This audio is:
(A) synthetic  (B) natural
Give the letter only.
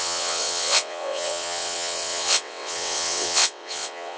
A